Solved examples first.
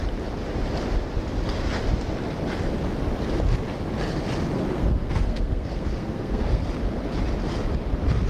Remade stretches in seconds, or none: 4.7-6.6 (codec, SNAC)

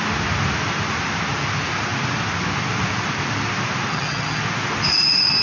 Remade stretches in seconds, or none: 3.9-4.4 (vocoder, HiFi-GAN)

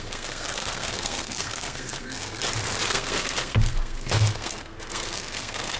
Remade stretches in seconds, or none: 0.0-2.4 (codec, SNAC); 2.9-5.8